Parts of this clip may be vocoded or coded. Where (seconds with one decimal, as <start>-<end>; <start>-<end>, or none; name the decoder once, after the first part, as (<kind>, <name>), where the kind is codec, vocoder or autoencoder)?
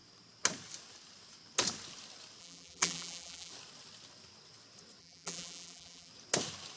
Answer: 2.4-3.5 (vocoder, BigVGAN v2); 5.0-6.1